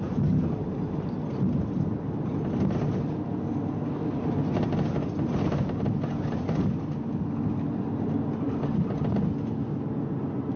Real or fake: real